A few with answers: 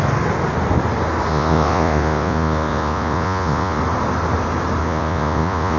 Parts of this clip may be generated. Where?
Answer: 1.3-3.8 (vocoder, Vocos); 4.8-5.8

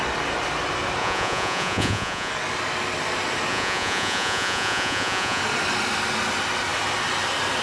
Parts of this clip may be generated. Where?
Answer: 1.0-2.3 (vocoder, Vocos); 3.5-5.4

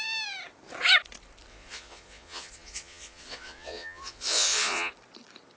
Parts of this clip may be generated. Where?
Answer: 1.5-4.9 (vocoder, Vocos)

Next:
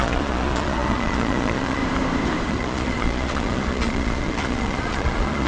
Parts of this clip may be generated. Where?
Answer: 0.0-1.8 (vocoder, Vocos); 2.5-5.5

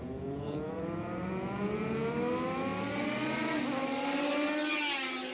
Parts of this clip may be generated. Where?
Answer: 0.0-2.1 (vocoder, Vocos)

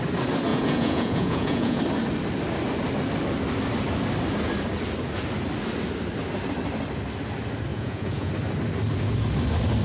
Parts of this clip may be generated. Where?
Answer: 0.5-1.8 (vocoder, Vocos); 7.7-8.3

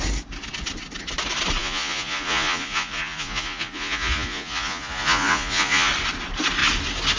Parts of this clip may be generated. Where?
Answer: 1.6-5.9 (vocoder, Vocos)